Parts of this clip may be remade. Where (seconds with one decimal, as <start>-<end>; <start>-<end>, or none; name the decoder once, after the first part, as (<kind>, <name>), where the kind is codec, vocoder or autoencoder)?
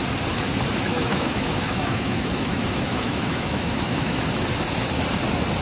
0.9-4.2 (autoencoder, DAC-VAE)